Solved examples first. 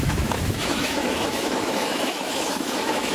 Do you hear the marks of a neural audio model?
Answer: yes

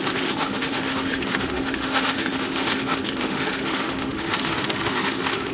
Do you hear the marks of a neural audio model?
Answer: yes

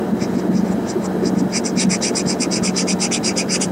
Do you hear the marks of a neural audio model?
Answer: no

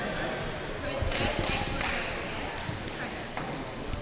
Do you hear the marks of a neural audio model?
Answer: no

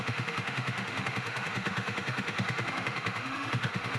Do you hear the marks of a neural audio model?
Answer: yes